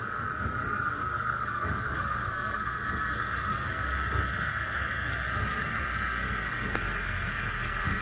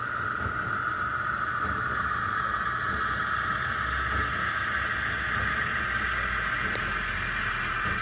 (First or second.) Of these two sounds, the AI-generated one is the first